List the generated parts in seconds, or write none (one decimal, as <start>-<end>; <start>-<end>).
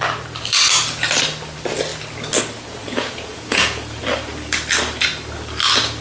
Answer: 2.8-4.0